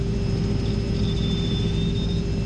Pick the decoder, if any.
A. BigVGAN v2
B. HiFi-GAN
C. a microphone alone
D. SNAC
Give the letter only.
C